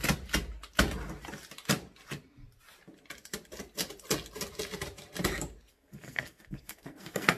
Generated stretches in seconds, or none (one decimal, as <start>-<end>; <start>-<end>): 5.7-7.4